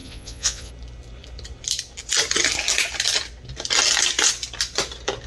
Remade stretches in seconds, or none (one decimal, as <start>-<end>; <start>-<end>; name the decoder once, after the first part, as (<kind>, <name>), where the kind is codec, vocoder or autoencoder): 0.0-0.7 (vocoder, Vocos)